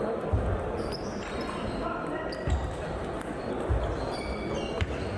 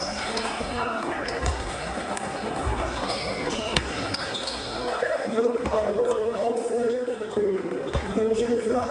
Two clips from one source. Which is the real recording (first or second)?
first